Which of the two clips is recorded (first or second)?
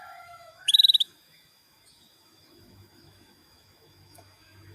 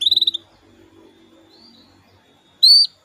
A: second